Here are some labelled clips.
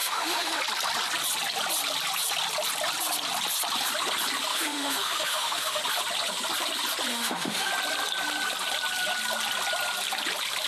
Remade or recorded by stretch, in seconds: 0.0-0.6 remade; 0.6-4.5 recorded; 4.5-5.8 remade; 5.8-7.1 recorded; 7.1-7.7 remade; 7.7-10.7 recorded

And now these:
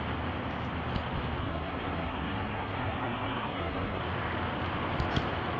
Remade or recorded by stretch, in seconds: 0.0-1.4 recorded; 1.4-4.0 remade; 4.0-5.6 recorded